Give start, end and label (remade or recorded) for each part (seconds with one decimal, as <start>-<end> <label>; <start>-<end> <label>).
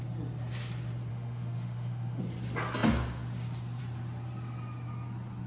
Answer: 0.0-1.1 recorded; 1.1-2.2 remade; 2.2-5.5 recorded